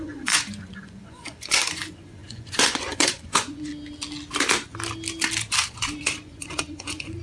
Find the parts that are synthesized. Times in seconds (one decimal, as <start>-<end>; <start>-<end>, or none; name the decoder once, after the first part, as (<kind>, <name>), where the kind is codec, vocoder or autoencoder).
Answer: 0.0-3.7 (vocoder, Vocos); 5.7-7.2